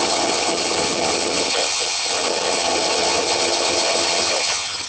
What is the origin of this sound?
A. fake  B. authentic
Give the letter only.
A